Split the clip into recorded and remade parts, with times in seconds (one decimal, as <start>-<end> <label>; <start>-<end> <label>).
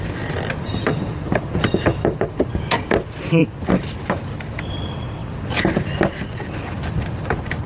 0.0-7.7 recorded